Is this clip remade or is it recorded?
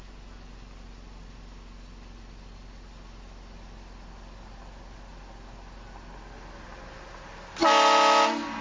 recorded